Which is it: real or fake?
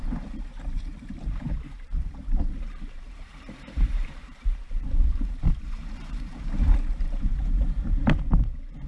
fake